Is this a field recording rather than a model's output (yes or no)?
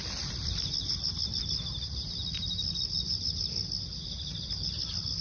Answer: yes